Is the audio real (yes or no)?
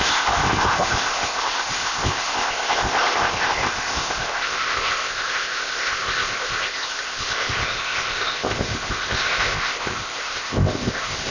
no